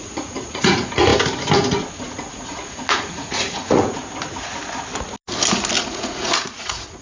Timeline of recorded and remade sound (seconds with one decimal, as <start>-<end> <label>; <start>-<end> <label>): 0.0-1.1 remade; 1.1-1.9 recorded; 1.9-4.0 remade; 4.0-5.8 recorded; 5.8-7.0 remade